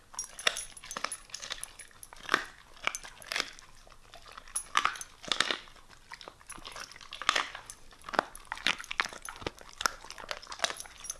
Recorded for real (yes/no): yes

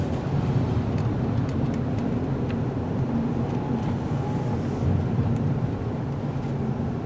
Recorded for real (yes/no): no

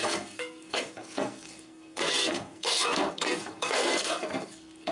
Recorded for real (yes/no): no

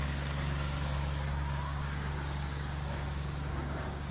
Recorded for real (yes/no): no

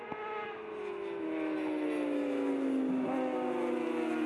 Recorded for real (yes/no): yes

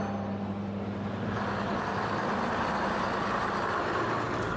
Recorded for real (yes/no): yes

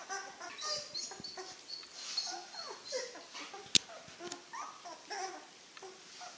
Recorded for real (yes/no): yes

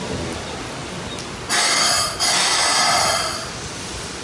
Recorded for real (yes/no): yes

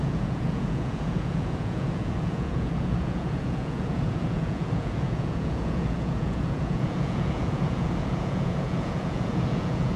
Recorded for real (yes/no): no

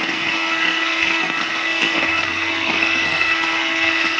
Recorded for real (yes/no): no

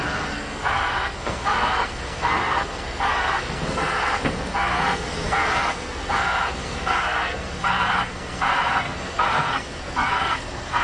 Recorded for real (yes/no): no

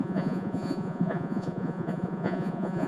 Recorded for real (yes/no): no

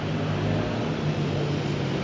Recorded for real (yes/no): yes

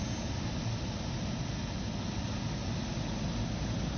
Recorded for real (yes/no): yes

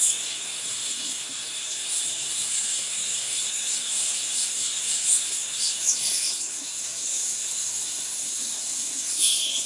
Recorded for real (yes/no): no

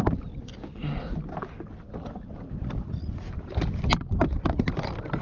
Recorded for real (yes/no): yes